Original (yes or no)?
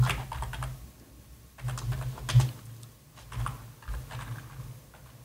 yes